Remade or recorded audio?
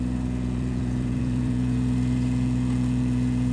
remade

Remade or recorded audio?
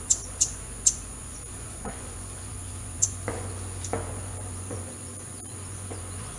remade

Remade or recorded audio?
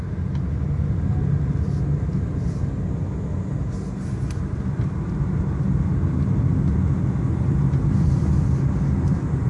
recorded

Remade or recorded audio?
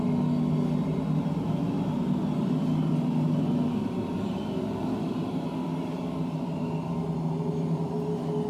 recorded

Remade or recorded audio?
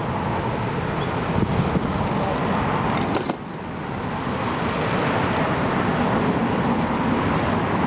recorded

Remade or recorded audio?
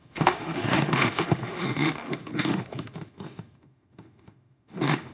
remade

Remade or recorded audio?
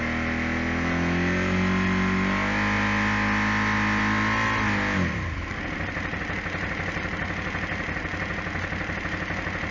recorded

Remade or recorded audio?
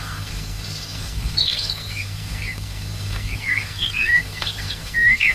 remade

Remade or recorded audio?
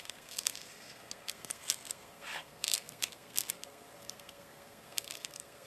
remade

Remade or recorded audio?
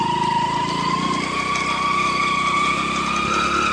recorded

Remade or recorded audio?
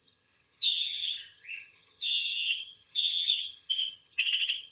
remade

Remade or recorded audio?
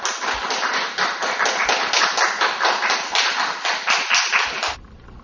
recorded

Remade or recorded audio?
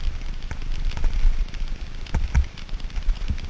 recorded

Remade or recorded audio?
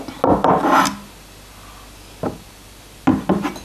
recorded